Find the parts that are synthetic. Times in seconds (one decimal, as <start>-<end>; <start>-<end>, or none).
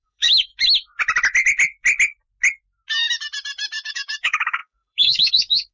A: 0.0-0.5; 3.9-5.7